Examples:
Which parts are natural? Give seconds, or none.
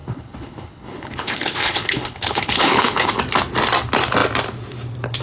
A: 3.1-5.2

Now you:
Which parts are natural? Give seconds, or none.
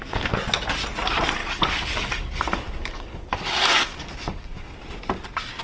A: 0.0-1.4; 4.8-5.6